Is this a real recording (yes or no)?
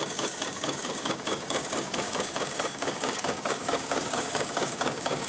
no